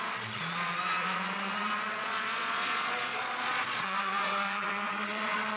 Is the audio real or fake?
fake